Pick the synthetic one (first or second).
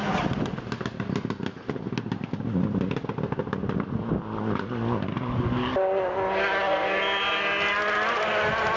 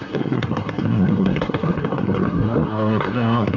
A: second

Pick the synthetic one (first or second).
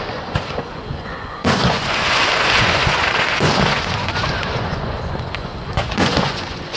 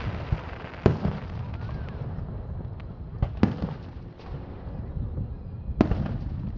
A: first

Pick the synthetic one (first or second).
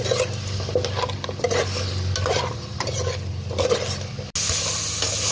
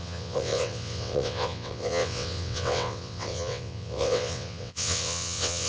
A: second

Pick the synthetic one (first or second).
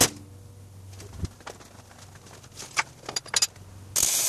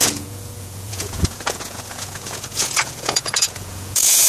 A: second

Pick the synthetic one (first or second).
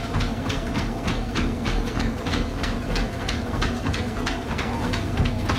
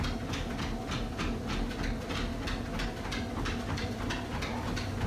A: first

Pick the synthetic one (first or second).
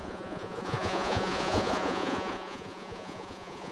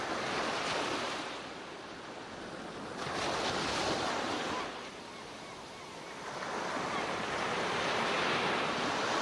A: first